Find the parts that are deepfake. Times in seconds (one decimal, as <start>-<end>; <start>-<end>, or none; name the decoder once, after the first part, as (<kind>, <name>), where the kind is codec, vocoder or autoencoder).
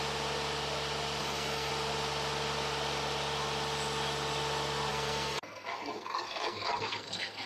1.2-1.7 (codec, SNAC); 4.9-7.5